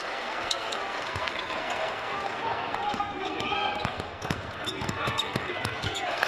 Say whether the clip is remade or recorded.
remade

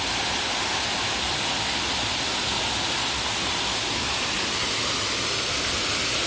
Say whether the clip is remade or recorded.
recorded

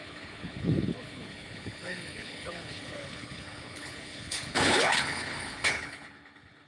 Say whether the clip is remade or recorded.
remade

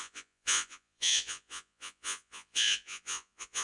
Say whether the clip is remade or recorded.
remade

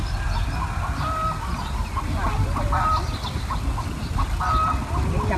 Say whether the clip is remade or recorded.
recorded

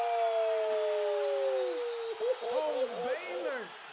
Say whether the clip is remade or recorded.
recorded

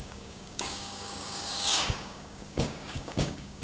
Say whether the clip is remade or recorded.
remade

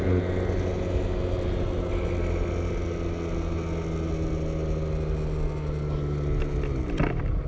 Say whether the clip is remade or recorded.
recorded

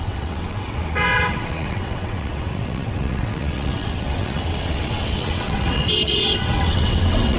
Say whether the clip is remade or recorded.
remade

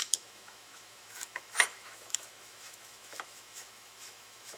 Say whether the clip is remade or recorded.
remade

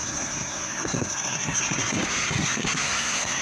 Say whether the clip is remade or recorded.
remade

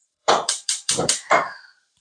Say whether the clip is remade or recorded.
remade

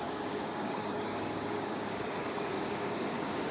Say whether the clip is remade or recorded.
remade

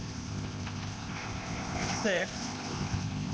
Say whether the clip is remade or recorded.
remade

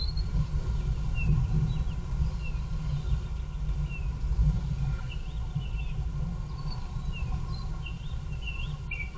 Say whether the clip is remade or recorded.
recorded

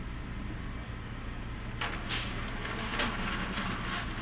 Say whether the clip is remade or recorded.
recorded